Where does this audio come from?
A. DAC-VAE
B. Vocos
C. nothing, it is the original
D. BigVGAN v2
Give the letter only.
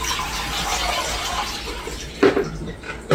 C